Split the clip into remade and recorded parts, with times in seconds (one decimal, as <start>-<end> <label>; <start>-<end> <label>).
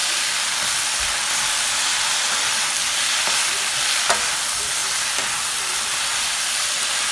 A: 0.0-7.1 recorded